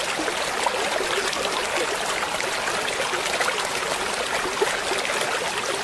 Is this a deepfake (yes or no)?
no